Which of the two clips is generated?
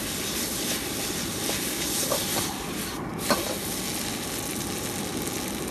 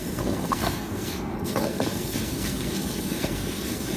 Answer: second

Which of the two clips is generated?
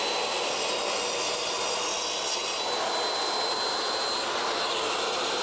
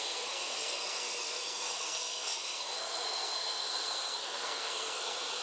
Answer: second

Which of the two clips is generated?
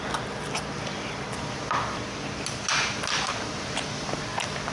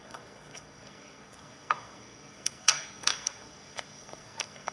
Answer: second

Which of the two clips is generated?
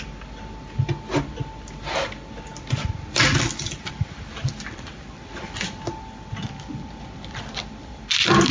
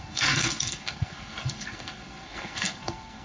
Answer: second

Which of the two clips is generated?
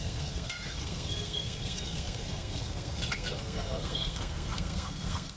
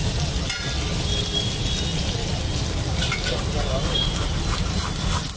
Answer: first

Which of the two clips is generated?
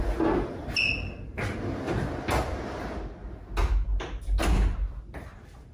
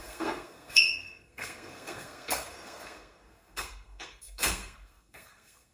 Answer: second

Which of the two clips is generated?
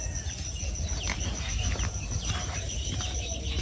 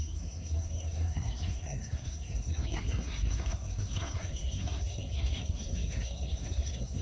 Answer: second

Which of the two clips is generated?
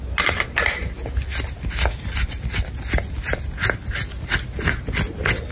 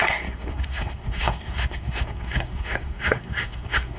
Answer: second